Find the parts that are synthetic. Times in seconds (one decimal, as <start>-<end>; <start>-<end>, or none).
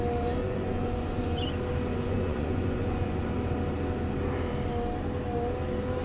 0.4-1.4; 1.9-3.3